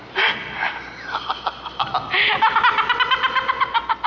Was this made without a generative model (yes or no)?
yes